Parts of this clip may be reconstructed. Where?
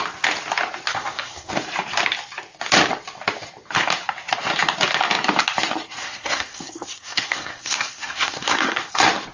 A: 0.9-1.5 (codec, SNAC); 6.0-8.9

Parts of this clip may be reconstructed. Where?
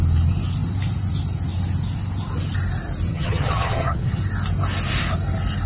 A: 3.1-4.2 (vocoder, HiFi-GAN)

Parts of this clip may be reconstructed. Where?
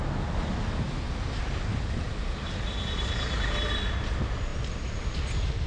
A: 1.7-3.7 (vocoder, BigVGAN v2); 4.5-5.1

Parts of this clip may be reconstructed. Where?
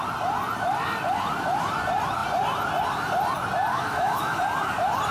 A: 3.7-4.4 (autoencoder, DAC-VAE)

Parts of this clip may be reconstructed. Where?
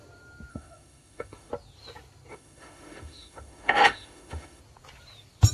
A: 0.5-1.5 (autoencoder, DAC-VAE); 2.3-4.6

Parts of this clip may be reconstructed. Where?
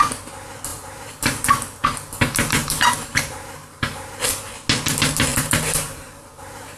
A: 0.7-4.3 (vocoder, BigVGAN v2); 5.3-6.8